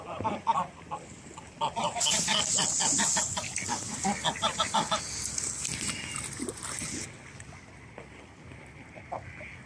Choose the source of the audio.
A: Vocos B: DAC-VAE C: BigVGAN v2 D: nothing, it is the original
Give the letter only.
D